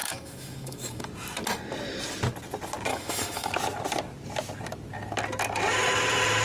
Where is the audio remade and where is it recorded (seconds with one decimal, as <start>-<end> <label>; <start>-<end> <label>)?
0.0-1.0 remade; 1.0-2.9 recorded; 2.9-3.5 remade; 3.5-6.4 recorded

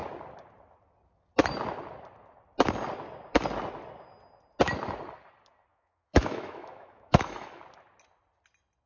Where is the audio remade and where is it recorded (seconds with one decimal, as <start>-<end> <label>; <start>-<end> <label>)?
0.0-5.7 recorded; 5.7-7.6 remade; 7.6-8.9 recorded

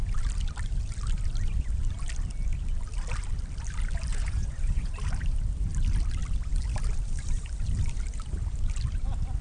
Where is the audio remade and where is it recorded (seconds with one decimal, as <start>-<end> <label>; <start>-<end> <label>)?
0.0-4.1 recorded; 4.1-4.9 remade; 4.9-9.4 recorded

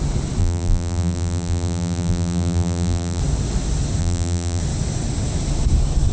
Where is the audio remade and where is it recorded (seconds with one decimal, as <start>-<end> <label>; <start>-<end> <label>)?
0.0-0.4 recorded; 0.4-3.2 remade; 3.2-4.0 recorded; 4.0-4.6 remade; 4.6-6.1 recorded

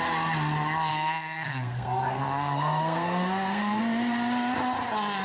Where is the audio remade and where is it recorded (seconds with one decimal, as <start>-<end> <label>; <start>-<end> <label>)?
0.0-0.9 recorded; 0.9-3.8 remade; 3.8-5.2 recorded

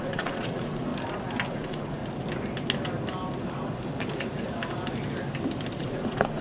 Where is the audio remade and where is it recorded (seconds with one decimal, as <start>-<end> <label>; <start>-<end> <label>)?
0.0-0.9 remade; 0.9-1.5 recorded; 1.5-2.0 remade; 2.0-5.8 recorded; 5.8-6.4 remade

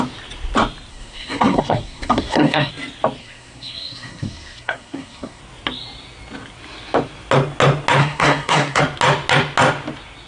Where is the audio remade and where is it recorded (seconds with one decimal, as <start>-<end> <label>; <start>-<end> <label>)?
0.0-0.9 recorded; 0.9-2.7 remade; 2.7-3.2 recorded; 3.2-5.4 remade; 5.4-8.0 recorded; 8.0-8.8 remade; 8.8-10.3 recorded